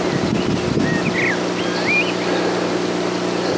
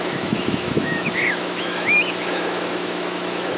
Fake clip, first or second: second